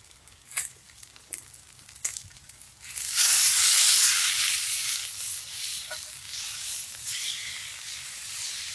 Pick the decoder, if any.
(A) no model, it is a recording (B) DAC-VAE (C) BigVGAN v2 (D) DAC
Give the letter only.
D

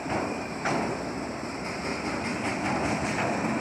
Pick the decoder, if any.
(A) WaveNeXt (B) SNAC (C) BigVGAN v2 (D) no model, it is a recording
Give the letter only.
D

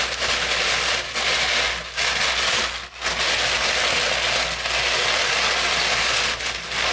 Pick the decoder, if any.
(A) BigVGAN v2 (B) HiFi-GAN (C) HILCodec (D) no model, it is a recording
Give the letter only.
D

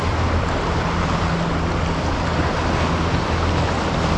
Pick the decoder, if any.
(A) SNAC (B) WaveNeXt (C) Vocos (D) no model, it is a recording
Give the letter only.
D